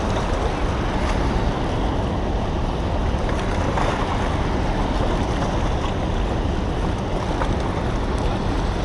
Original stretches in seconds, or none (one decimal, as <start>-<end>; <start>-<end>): 0.0-8.8